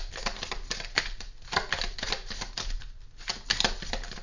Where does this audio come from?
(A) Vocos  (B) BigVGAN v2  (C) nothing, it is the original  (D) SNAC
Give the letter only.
C